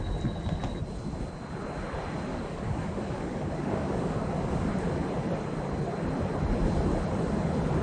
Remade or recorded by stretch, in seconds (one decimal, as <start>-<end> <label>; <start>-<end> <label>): 0.0-2.3 recorded; 2.3-4.7 remade; 4.7-7.8 recorded